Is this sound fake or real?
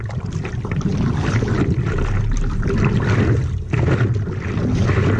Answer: real